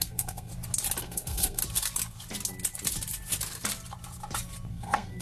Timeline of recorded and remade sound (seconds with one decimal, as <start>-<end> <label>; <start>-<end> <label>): 0.0-0.5 remade; 0.5-1.0 recorded; 1.0-1.6 remade; 1.6-4.7 recorded; 4.7-5.2 remade